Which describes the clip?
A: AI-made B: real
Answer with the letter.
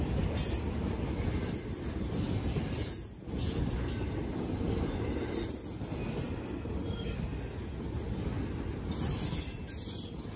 B